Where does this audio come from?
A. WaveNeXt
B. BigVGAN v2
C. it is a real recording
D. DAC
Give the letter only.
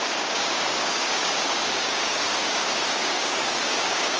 D